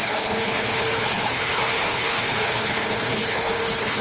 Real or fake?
fake